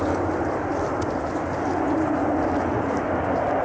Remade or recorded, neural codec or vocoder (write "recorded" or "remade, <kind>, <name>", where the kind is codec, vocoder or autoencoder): recorded